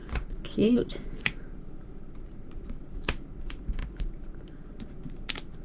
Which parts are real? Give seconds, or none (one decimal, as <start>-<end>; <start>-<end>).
none